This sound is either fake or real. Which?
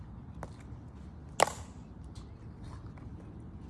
real